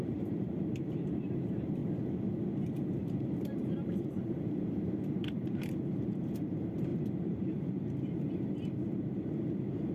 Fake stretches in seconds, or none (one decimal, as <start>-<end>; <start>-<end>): 0.0-1.8; 3.2-9.9